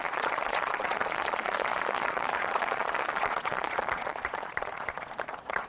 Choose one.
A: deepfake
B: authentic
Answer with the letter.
A